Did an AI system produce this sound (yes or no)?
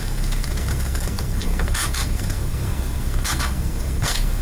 yes